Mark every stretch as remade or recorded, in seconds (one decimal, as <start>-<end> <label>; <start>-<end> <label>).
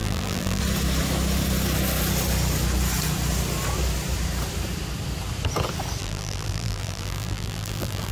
0.0-0.6 remade; 0.6-6.0 recorded; 6.0-8.1 remade